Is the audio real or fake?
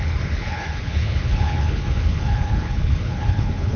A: fake